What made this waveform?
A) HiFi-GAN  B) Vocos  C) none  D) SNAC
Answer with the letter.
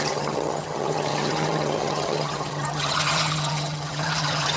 A